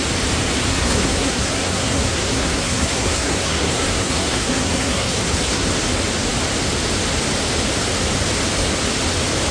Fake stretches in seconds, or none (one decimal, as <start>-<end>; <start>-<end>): 0.7-5.7